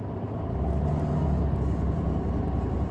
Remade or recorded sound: recorded